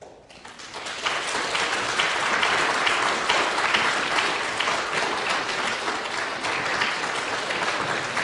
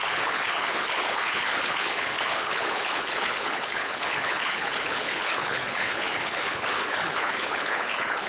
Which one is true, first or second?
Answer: first